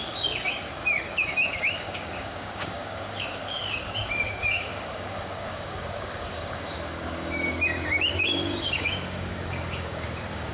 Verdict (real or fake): fake